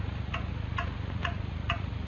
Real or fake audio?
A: fake